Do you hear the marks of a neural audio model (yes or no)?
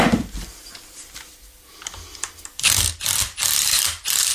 no